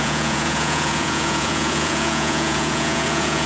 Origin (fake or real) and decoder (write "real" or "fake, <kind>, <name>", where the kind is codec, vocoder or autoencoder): fake, vocoder, Vocos